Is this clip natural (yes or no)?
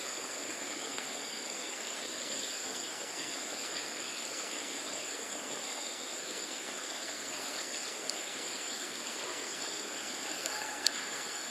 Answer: no